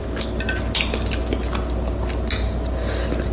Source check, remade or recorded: recorded